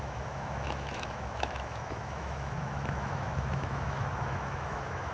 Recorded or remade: remade